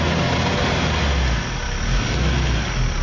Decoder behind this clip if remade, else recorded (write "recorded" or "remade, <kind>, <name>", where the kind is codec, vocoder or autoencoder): recorded